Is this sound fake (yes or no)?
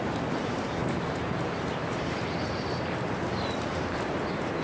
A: no